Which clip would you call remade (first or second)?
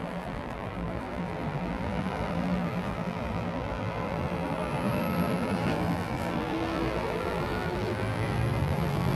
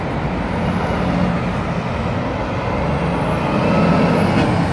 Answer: first